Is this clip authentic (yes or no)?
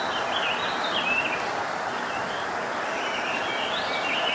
yes